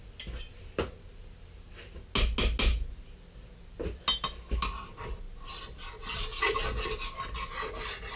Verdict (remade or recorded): recorded